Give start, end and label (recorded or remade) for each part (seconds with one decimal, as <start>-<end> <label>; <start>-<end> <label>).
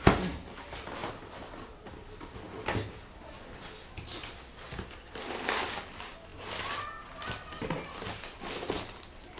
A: 0.0-9.4 recorded